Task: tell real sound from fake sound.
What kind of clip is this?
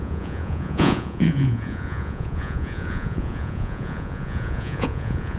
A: fake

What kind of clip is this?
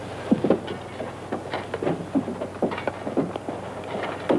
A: real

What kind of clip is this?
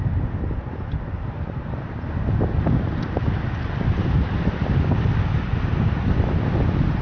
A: real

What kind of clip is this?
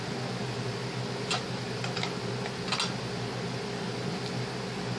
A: real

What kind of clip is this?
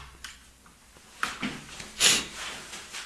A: real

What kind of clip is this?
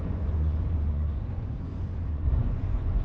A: fake